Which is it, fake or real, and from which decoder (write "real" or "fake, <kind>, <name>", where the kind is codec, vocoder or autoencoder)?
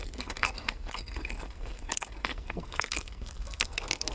fake, codec, SNAC